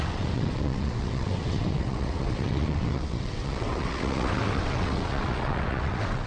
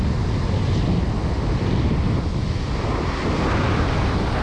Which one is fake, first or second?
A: first